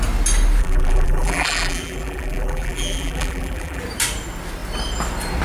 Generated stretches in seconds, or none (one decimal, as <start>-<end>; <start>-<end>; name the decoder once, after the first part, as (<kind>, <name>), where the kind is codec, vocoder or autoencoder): 0.6-3.8 (vocoder, BigVGAN v2)

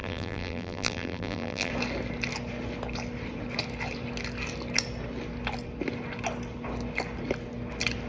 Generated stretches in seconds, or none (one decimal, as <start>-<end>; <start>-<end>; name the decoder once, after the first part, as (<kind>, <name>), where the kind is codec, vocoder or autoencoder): 0.0-1.7 (vocoder, BigVGAN v2)

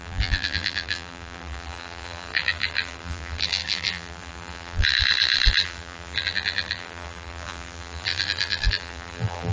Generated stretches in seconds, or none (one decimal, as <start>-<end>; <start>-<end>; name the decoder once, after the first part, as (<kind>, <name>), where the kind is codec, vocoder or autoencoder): 0.0-9.5 (vocoder, BigVGAN v2)

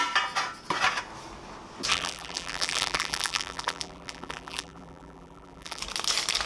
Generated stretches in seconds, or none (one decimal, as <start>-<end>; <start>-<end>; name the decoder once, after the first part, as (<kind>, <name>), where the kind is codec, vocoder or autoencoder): 1.9-5.8 (vocoder, BigVGAN v2)

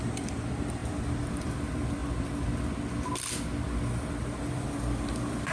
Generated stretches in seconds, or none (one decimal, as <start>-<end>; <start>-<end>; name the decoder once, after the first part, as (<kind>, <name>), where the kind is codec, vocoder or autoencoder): 0.0-2.0 (vocoder, BigVGAN v2); 4.5-5.5

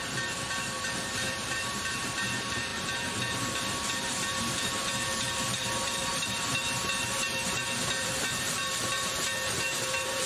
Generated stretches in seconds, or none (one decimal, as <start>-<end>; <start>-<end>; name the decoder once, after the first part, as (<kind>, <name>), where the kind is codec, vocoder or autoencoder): 0.0-10.3 (vocoder, BigVGAN v2)

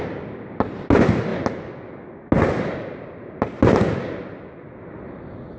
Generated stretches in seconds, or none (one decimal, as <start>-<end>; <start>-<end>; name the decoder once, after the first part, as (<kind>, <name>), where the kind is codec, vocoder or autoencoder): none